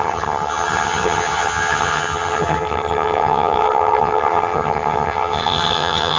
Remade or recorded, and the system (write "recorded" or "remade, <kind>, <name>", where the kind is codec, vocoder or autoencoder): remade, vocoder, HiFi-GAN